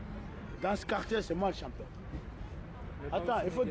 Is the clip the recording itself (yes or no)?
yes